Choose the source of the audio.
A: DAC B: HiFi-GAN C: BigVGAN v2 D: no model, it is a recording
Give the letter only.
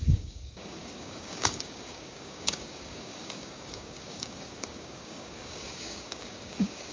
A